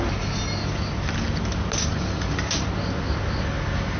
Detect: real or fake real